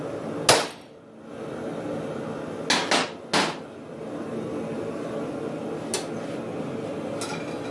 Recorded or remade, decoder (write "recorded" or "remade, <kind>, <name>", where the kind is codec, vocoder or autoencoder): recorded